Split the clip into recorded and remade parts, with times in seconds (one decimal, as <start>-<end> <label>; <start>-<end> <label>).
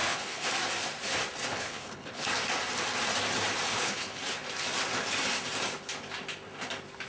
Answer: 0.0-0.5 remade; 0.5-1.5 recorded; 1.5-2.3 remade; 2.3-3.7 recorded; 3.7-4.2 remade; 4.2-7.1 recorded